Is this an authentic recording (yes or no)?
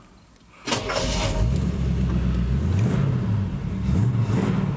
yes